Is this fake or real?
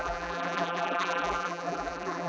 fake